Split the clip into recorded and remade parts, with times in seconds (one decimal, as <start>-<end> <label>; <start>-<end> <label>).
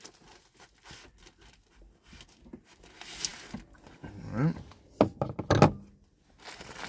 0.0-6.9 recorded